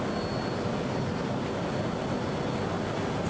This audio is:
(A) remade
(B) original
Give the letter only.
B